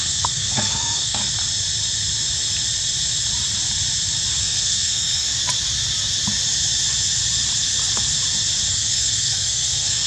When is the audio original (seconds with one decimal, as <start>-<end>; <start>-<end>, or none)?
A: 1.2-4.4; 5.3-8.7